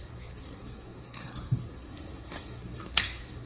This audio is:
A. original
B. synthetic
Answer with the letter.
B